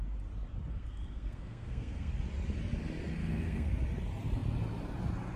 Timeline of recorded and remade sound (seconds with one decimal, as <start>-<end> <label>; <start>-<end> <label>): 0.0-0.7 recorded; 0.7-2.1 remade; 2.1-3.2 recorded; 3.2-3.7 remade; 3.7-5.4 recorded